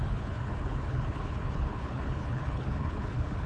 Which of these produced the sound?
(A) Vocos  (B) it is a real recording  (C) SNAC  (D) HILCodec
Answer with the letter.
D